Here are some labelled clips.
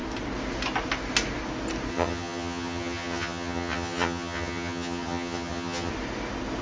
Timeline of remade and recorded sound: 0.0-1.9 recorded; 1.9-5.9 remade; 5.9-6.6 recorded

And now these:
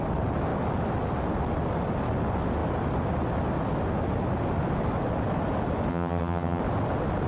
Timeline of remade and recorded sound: 0.0-5.9 recorded; 5.9-6.6 remade; 6.6-7.3 recorded

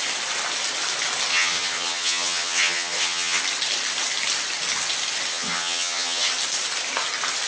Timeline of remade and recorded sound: 0.0-1.3 recorded; 1.3-3.4 remade; 3.4-5.3 recorded; 5.3-6.3 remade; 6.3-7.5 recorded

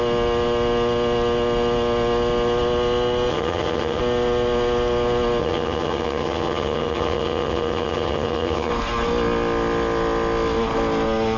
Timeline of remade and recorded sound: 0.0-3.3 recorded; 3.3-4.0 remade; 4.0-5.4 recorded; 5.4-8.7 remade; 8.7-11.4 recorded

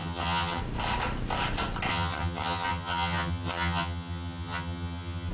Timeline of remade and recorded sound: 0.0-0.6 remade; 0.6-1.9 recorded; 1.9-5.3 remade

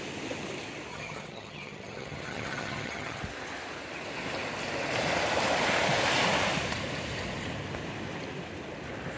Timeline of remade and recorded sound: 0.0-0.9 recorded; 0.9-3.2 remade; 3.2-9.2 recorded

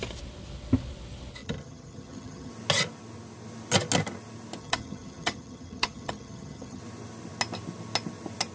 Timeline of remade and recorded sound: 0.0-1.4 recorded; 1.4-2.5 remade; 2.5-4.6 recorded; 4.6-6.8 remade; 6.8-8.5 recorded

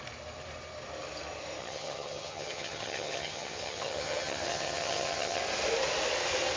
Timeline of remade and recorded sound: 0.0-1.6 recorded; 1.6-5.4 remade; 5.4-6.6 recorded